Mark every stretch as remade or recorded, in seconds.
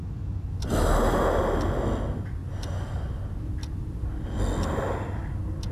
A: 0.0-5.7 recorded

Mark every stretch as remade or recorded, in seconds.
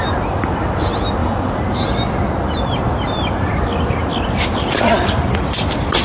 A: 0.0-6.0 recorded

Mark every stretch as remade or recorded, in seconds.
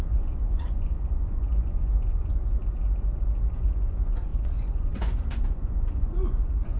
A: 0.0-2.6 remade; 2.6-3.5 recorded; 3.5-6.8 remade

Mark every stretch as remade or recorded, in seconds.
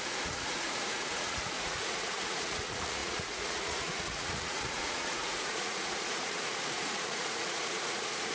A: 0.0-8.3 remade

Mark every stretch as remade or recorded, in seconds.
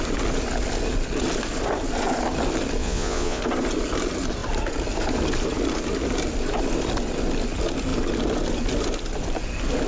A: 0.0-2.8 recorded; 2.8-3.4 remade; 3.4-9.9 recorded